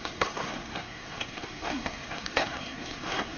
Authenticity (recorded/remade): remade